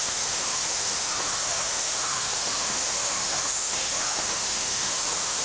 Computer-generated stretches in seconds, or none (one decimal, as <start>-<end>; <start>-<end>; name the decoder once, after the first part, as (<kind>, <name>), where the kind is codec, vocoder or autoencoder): 0.0-5.4 (autoencoder, DAC-VAE)